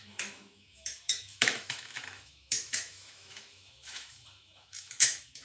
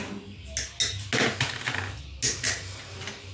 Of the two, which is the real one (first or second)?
second